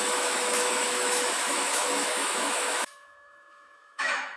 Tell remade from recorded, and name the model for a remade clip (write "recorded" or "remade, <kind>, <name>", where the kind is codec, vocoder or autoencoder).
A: remade, autoencoder, DAC-VAE